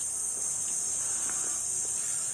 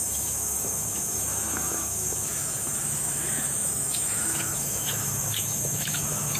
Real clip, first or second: first